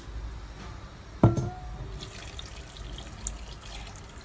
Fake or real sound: real